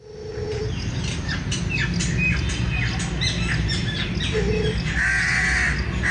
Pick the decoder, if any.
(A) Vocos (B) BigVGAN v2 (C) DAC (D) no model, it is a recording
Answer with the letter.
D